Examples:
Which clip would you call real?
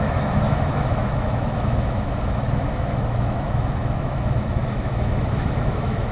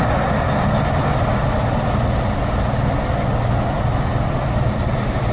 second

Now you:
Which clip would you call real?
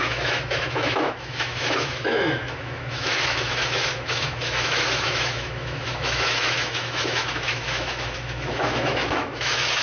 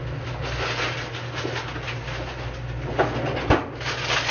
second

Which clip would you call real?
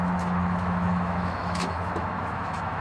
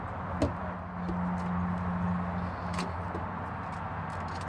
second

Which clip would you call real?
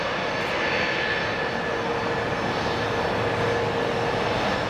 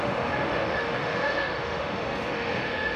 first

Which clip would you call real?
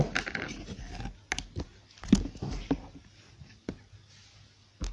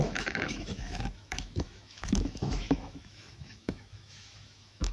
first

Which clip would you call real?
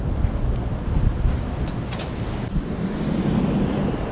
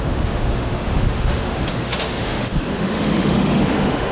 first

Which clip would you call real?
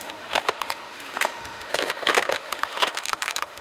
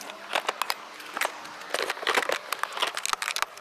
second